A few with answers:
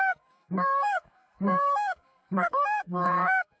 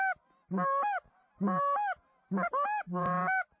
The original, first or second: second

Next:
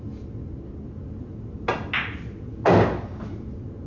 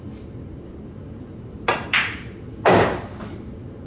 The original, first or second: first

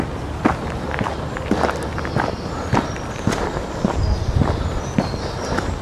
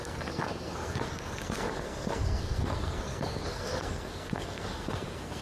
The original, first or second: first